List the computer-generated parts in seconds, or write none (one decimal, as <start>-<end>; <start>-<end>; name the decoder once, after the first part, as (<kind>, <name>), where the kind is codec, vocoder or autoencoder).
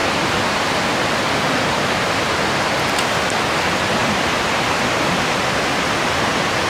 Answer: 4.0-5.1 (vocoder, BigVGAN v2)